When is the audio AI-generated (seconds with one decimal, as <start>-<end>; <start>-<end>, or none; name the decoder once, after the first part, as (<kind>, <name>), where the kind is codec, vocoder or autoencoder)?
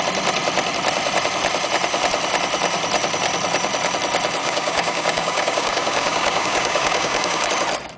4.4-7.5 (codec, DAC)